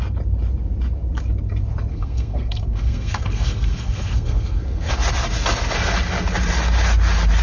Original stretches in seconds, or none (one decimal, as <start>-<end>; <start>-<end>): 0.0-1.9; 4.9-7.4